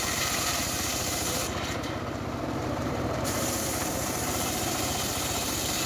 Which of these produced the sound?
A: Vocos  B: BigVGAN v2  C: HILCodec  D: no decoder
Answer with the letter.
B